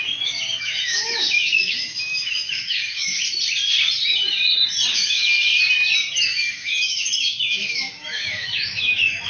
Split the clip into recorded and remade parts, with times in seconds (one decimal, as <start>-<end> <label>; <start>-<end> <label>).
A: 0.0-3.2 remade; 3.2-4.9 recorded; 4.9-5.5 remade; 5.5-6.2 recorded; 6.2-9.3 remade

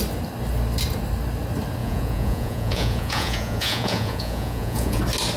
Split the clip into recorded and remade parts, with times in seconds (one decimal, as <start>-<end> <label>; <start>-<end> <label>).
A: 0.0-1.8 recorded; 1.8-5.0 remade; 5.0-5.4 recorded

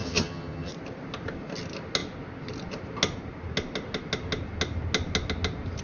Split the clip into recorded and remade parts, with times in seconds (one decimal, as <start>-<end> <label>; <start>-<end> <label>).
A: 0.0-0.7 remade; 0.7-5.8 recorded

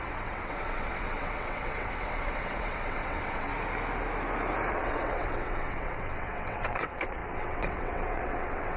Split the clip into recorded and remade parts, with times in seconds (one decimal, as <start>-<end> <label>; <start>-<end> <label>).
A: 0.0-3.5 remade; 3.5-4.7 recorded; 4.7-8.8 remade

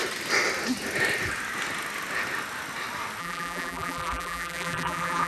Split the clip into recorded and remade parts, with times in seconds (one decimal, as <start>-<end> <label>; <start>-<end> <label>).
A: 0.0-3.2 recorded; 3.2-5.3 remade

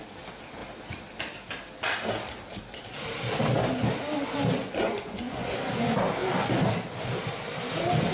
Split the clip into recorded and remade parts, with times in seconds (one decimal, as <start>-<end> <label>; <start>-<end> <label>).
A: 0.0-4.6 recorded; 4.6-5.7 remade; 5.7-8.1 recorded

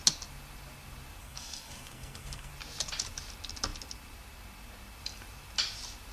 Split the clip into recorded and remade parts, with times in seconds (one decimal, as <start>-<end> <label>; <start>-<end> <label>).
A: 0.0-1.2 recorded; 1.2-2.5 remade; 2.5-6.1 recorded